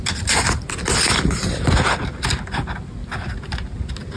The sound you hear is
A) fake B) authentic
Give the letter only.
B